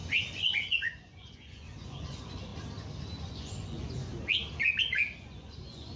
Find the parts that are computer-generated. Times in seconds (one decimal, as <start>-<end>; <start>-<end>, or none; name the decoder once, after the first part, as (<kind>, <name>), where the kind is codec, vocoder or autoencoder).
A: 0.0-2.5 (vocoder, Vocos); 3.2-4.1; 4.8-6.0